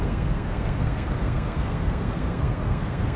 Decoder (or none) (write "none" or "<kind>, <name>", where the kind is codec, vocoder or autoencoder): codec, SNAC